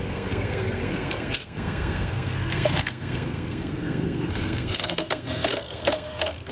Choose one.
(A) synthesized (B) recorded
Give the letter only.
A